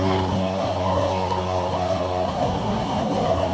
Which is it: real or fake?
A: fake